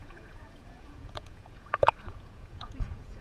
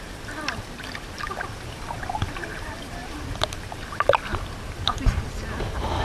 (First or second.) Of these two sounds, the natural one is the second